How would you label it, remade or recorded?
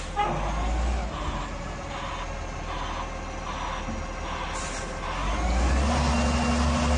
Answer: recorded